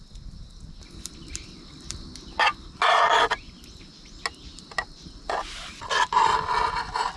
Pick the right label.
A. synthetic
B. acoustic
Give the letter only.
B